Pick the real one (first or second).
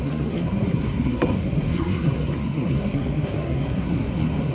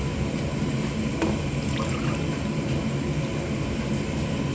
second